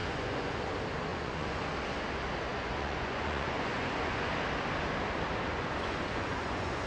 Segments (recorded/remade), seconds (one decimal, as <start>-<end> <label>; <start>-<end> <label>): 0.0-0.6 remade; 0.6-1.1 recorded; 1.1-1.7 remade; 1.7-2.5 recorded; 2.5-4.3 remade; 4.3-5.5 recorded; 5.5-6.9 remade